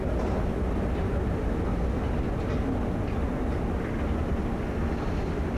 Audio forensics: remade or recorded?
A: recorded